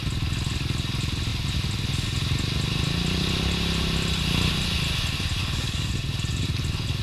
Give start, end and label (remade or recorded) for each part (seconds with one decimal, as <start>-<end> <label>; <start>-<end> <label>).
0.0-5.4 recorded; 5.4-5.9 remade; 5.9-7.0 recorded